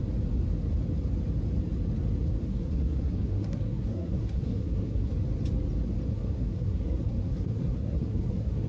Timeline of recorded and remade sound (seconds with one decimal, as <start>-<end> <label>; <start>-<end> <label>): 0.0-2.5 recorded; 2.5-5.1 remade; 5.1-6.1 recorded; 6.1-8.7 remade

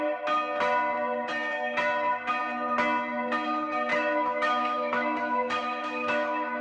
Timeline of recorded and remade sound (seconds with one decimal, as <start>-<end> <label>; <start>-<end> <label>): 0.0-3.9 recorded; 3.9-6.6 remade

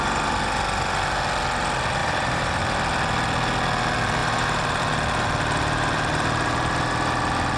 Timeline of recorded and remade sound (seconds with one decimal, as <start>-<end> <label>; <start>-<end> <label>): 0.0-2.0 recorded; 2.0-2.6 remade; 2.6-4.2 recorded; 4.2-4.8 remade; 4.8-7.6 recorded